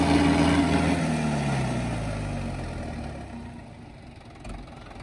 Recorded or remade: recorded